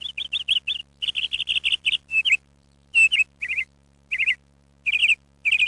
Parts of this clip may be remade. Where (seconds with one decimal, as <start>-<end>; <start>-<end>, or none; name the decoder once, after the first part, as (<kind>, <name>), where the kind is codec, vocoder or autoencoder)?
0.8-4.1 (vocoder, BigVGAN v2); 5.0-5.7